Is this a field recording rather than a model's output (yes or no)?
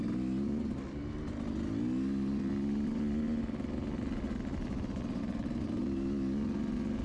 yes